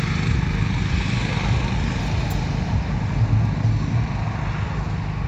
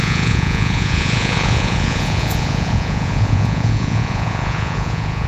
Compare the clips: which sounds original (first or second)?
first